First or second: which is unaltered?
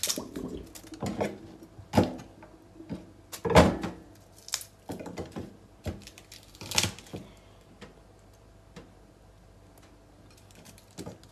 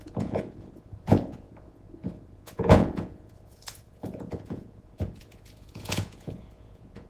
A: first